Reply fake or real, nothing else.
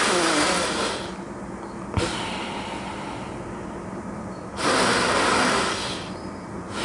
fake